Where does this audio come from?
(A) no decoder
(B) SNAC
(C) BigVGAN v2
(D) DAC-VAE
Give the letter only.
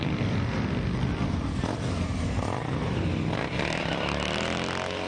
A